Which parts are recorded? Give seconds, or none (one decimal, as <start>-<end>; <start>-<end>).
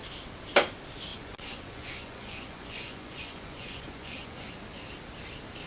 0.0-1.1; 4.5-5.7